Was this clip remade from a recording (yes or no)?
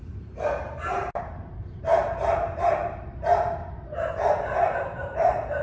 yes